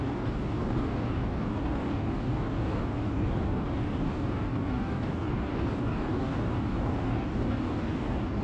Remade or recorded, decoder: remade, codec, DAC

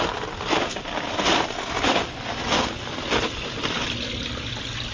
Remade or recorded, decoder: recorded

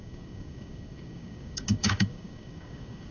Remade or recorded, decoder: remade, codec, DAC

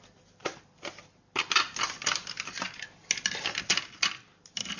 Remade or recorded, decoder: recorded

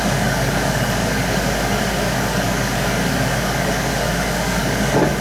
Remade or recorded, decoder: remade, codec, DAC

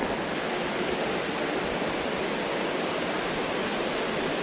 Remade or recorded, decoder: recorded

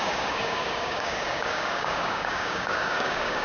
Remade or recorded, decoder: remade, codec, DAC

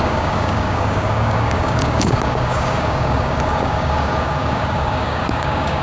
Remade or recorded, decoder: remade, codec, DAC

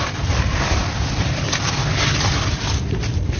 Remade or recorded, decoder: recorded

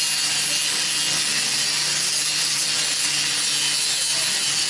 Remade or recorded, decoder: recorded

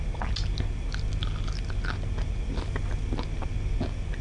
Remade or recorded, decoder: recorded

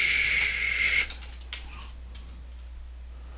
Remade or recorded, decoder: recorded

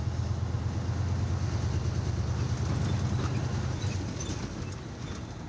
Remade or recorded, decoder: recorded